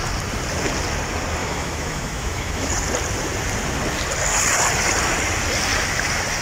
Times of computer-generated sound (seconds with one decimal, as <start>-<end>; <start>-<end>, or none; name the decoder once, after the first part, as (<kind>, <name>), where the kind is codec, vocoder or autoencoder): 1.4-2.7 (autoencoder, DAC-VAE)